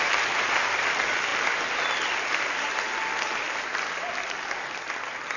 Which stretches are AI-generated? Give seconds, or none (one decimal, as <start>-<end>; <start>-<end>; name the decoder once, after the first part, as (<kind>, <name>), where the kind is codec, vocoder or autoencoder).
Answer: none